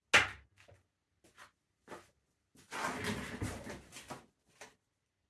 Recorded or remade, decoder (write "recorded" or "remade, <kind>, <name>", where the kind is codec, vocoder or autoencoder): recorded